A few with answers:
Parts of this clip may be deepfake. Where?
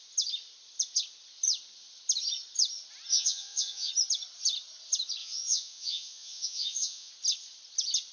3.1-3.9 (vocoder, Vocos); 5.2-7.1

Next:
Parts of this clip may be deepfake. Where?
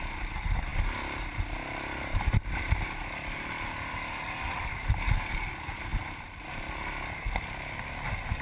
none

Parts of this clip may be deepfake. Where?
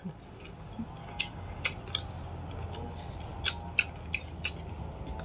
1.0-1.6 (codec, DAC)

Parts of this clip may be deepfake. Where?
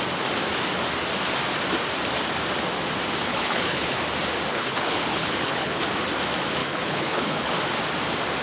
3.3-4.0 (codec, HILCodec); 4.5-5.8; 6.6-7.5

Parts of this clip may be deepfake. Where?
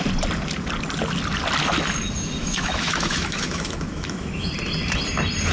2.4-4.5 (autoencoder, DAC-VAE)